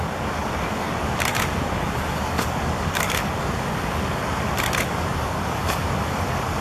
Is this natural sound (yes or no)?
no